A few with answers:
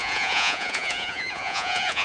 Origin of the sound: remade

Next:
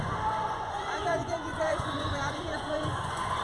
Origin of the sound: remade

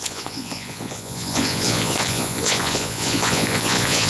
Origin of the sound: remade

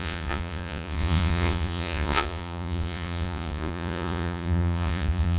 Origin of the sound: remade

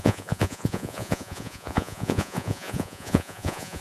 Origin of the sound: remade